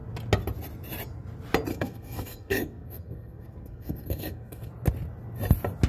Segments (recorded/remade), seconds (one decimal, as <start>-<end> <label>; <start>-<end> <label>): 0.0-1.7 recorded; 1.7-4.7 remade; 4.7-5.9 recorded